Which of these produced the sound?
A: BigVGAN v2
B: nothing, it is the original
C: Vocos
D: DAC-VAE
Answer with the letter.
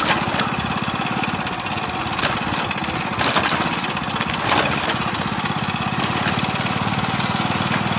B